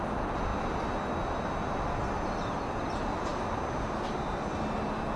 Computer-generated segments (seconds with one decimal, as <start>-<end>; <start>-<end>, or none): none